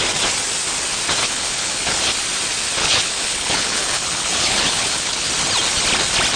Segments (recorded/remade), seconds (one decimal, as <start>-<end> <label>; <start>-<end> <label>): 0.0-1.2 recorded; 1.2-1.9 remade; 1.9-2.8 recorded; 2.8-5.3 remade; 5.3-6.4 recorded